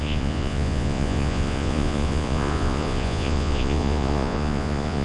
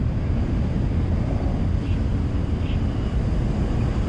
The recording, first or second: second